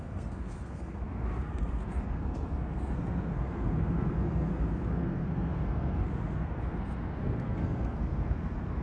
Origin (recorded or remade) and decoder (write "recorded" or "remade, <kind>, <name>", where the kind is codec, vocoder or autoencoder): remade, codec, SNAC